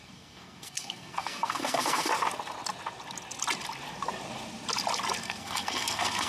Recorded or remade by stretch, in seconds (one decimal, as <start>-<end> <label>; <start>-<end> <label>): 0.0-2.1 remade; 2.1-5.2 recorded; 5.2-6.3 remade